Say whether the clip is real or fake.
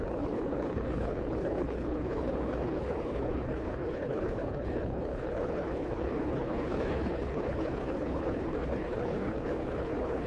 fake